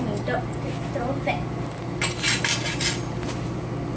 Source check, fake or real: real